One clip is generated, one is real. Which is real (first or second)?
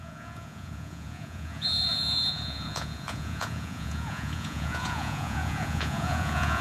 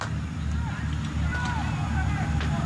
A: second